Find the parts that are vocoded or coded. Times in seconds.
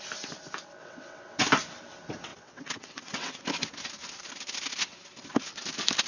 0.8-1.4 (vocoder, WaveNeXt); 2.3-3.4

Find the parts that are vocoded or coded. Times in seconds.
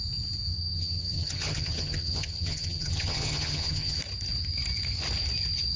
0.5-4.0 (vocoder, HiFi-GAN)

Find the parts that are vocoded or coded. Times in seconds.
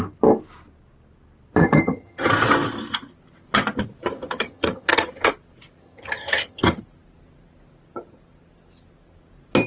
1.6-2.3 (vocoder, HiFi-GAN); 4.1-5.3; 5.8-6.8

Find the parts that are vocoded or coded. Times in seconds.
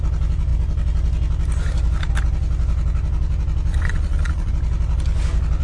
3.7-4.5 (vocoder, Vocos)